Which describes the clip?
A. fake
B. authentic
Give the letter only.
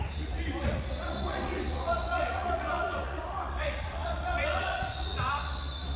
A